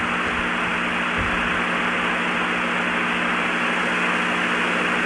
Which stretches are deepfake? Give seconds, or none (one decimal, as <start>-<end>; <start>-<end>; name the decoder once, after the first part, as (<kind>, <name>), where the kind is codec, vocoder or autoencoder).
none